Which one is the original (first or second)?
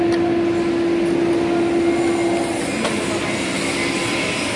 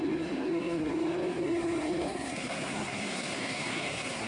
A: first